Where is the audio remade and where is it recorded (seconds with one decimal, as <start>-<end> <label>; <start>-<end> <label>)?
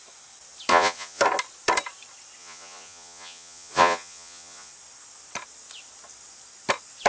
0.0-0.7 recorded; 0.7-1.2 remade; 1.2-2.4 recorded; 2.4-4.7 remade; 4.7-7.1 recorded